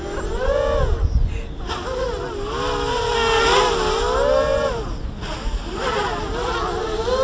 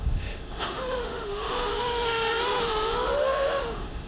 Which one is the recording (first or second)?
first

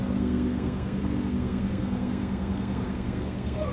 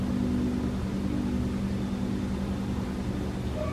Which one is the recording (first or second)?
second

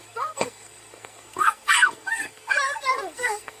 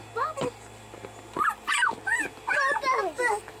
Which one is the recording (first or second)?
second